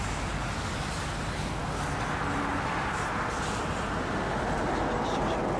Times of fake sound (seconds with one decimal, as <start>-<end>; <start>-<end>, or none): none